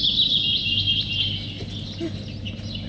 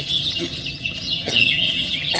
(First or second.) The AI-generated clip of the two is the second